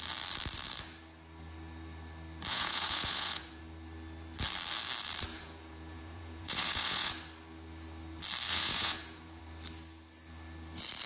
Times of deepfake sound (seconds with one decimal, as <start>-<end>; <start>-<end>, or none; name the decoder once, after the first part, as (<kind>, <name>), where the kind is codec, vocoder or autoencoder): 2.5-3.6 (vocoder, Vocos); 5.3-7.1; 8.5-9.4